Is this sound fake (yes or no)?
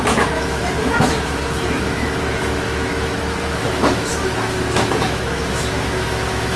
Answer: yes